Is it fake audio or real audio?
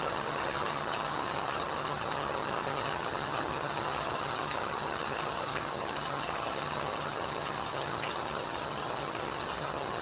fake